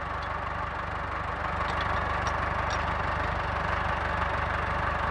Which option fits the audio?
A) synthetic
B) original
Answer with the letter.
B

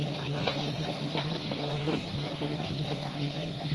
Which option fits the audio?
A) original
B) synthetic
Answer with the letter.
B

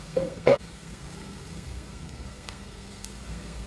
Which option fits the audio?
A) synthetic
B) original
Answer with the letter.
A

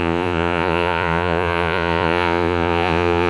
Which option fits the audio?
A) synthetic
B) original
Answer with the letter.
A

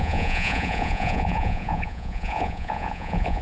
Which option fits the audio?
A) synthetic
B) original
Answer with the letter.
A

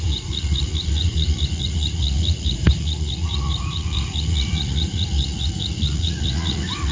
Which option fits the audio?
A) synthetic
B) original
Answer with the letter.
A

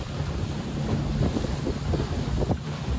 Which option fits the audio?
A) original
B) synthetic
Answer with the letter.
B